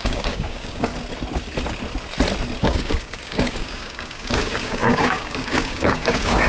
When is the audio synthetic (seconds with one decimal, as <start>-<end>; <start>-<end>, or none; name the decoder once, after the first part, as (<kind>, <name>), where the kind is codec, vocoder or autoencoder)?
0.0-0.9 (codec, DAC); 2.6-6.5